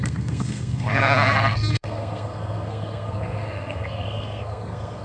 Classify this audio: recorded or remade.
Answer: remade